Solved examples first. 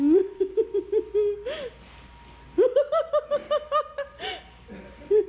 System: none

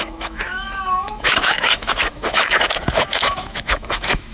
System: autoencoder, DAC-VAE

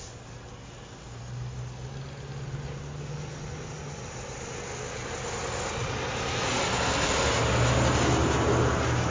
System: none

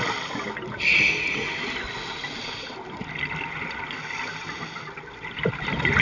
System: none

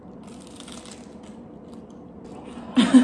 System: none